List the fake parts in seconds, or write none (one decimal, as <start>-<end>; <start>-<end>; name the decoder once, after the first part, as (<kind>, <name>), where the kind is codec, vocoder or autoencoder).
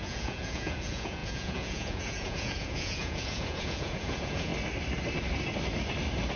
0.0-4.5 (vocoder, Vocos)